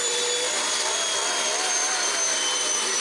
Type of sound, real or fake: fake